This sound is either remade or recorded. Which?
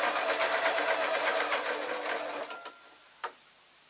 recorded